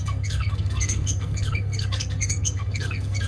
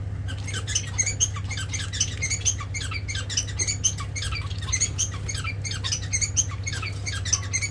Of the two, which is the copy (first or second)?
first